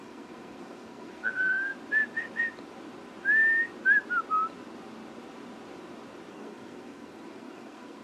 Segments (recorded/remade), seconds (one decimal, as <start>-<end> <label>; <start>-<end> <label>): 0.0-1.7 remade; 1.7-6.3 recorded; 6.3-8.0 remade